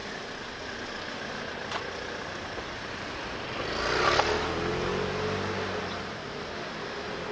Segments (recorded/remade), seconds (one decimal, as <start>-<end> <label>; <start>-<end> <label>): 0.0-7.3 recorded